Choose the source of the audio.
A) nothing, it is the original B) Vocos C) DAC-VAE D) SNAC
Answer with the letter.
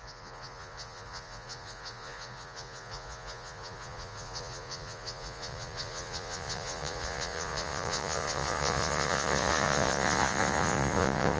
B